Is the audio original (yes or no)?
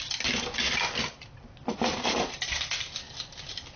yes